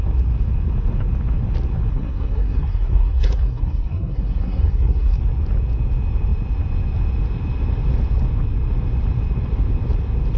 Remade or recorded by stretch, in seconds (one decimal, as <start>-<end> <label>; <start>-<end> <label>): 0.0-1.9 recorded; 1.9-5.2 remade; 5.2-10.4 recorded